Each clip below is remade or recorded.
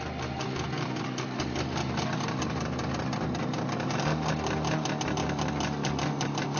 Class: recorded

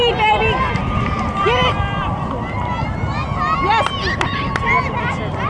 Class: recorded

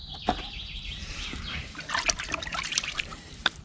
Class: remade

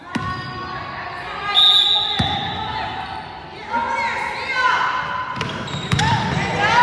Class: recorded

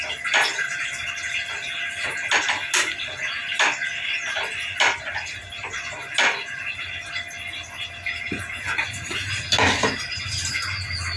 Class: recorded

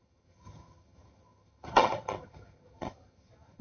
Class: remade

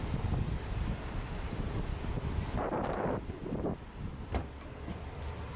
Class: recorded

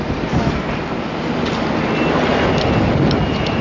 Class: recorded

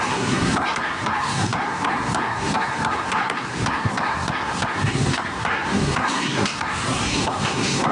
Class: remade